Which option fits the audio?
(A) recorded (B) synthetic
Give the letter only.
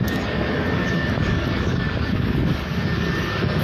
B